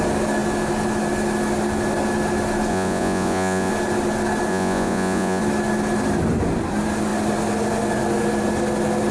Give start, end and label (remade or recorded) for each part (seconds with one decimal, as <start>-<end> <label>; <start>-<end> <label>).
0.0-2.7 recorded; 2.7-3.7 remade; 3.7-4.5 recorded; 4.5-5.4 remade; 5.4-9.1 recorded